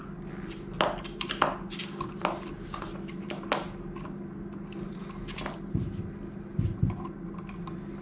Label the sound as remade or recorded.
recorded